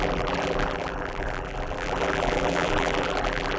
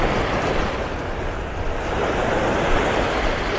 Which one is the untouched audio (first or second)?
second